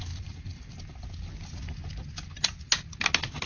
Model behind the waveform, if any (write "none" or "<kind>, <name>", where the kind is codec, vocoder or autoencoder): none